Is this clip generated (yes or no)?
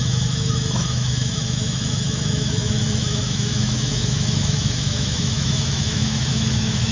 yes